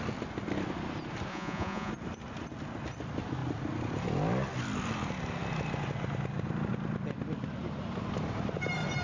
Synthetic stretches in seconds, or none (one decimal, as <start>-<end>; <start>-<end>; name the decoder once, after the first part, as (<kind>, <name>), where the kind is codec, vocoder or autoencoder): 1.3-1.9 (vocoder, Vocos)